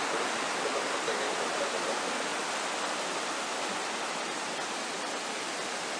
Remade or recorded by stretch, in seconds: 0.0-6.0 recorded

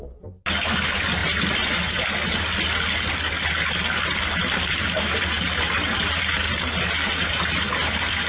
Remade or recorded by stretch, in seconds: 0.0-1.2 recorded; 1.2-1.9 remade; 1.9-4.4 recorded; 4.4-6.3 remade; 6.3-8.3 recorded

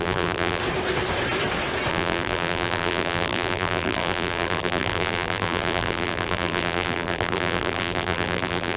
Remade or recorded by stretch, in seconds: 0.0-0.6 remade; 0.6-1.9 recorded; 1.9-8.8 remade

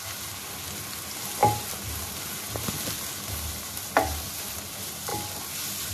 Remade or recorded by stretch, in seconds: 0.0-1.4 recorded; 1.4-2.3 remade; 2.3-5.9 recorded

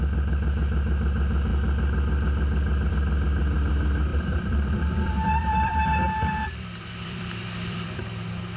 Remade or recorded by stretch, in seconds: 0.0-4.1 recorded; 4.1-8.0 remade; 8.0-8.6 recorded

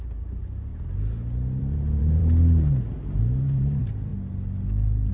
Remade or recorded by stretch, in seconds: 0.0-0.7 remade; 0.7-1.6 recorded; 1.6-2.2 remade; 2.2-3.2 recorded; 3.2-4.1 remade; 4.1-5.1 recorded